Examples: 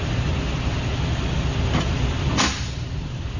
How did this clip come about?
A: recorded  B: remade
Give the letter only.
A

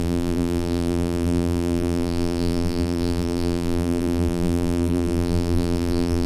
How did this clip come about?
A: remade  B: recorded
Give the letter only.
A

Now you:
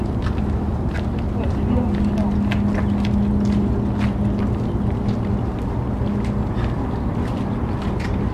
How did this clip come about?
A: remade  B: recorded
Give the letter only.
B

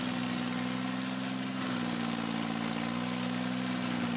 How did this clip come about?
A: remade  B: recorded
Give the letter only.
B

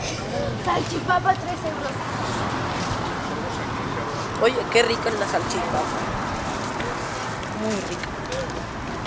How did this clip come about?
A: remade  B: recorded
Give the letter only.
B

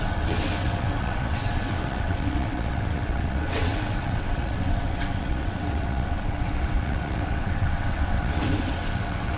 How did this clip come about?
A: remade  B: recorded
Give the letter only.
A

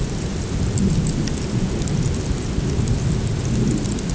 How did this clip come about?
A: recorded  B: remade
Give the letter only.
A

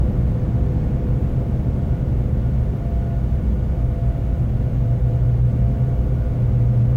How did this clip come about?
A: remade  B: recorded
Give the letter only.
B